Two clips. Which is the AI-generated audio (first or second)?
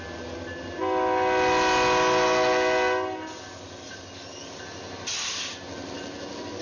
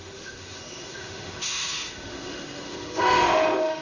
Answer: second